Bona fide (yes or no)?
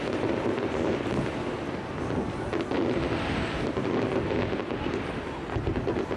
yes